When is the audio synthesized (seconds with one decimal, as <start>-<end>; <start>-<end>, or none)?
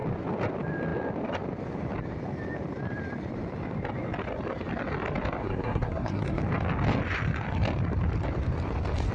5.4-6.4